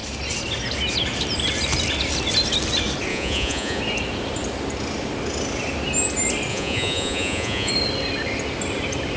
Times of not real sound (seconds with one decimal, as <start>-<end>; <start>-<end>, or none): 3.1-3.8; 6.5-7.7

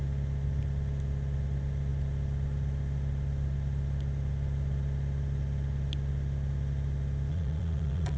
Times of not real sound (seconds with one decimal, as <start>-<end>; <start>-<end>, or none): 7.3-8.2

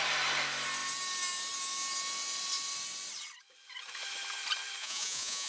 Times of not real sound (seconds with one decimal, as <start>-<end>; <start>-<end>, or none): 4.8-5.5

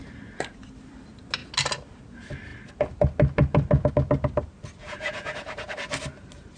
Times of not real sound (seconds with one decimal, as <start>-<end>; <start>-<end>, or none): 4.8-5.7